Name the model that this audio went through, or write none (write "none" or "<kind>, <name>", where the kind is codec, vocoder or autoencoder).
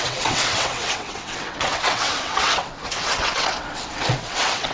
vocoder, WaveNeXt